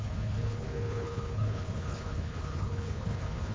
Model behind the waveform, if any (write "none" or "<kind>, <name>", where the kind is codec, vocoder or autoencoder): codec, HILCodec